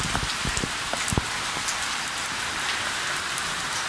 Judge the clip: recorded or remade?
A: remade